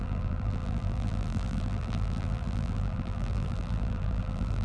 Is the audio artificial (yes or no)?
yes